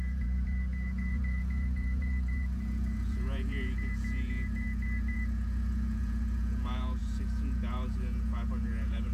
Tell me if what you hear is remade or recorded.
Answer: remade